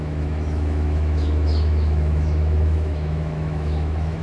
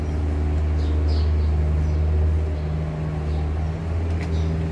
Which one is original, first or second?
second